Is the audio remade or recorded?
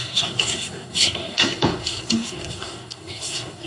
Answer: remade